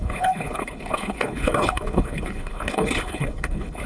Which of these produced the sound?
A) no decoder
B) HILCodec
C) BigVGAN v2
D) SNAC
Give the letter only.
B